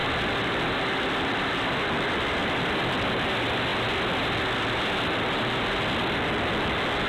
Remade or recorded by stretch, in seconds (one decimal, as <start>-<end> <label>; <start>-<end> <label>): 0.0-1.7 remade; 1.7-2.4 recorded; 2.4-2.9 remade; 2.9-7.1 recorded